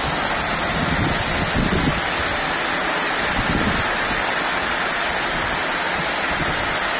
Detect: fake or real real